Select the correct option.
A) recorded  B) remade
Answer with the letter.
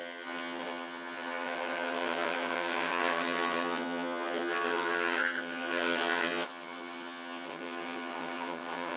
B